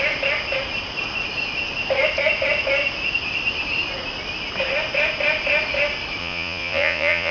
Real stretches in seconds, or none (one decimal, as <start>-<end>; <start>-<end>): 0.0-6.2